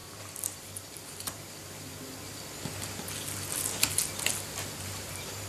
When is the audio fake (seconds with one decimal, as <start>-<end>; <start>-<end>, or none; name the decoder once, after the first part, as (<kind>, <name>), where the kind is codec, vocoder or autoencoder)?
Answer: 0.0-1.9 (vocoder, BigVGAN v2); 4.8-5.5